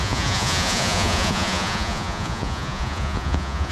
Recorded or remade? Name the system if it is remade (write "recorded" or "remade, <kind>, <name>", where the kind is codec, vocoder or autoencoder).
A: remade, vocoder, Vocos